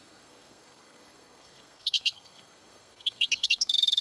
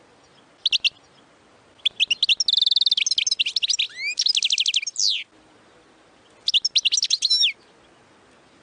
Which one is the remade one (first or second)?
first